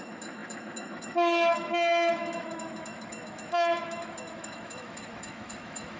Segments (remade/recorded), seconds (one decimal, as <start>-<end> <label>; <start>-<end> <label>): 0.0-6.0 remade

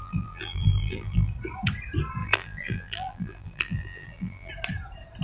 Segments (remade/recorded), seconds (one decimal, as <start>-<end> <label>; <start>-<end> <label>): 0.0-1.3 remade; 1.3-2.2 recorded; 2.2-4.5 remade; 4.5-5.2 recorded

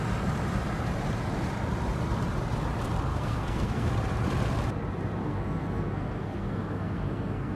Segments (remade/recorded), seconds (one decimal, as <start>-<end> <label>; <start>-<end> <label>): 0.0-3.1 recorded; 3.1-3.9 remade; 3.9-5.2 recorded; 5.2-7.6 remade

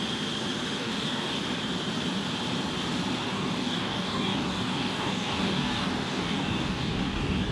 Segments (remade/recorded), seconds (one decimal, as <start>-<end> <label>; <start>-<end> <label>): 0.0-0.8 recorded; 0.8-1.4 remade; 1.4-3.3 recorded; 3.3-7.5 remade

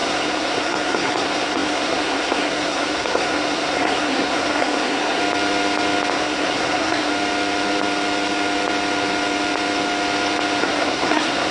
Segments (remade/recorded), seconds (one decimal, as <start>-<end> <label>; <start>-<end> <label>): 0.0-5.2 remade; 5.2-6.1 recorded; 6.1-7.1 remade; 7.1-10.6 recorded; 10.6-11.5 remade